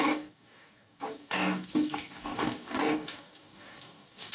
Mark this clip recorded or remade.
remade